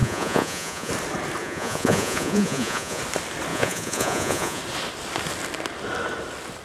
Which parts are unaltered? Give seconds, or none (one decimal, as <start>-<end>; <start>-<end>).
0.9-1.4; 3.0-3.5; 4.6-6.6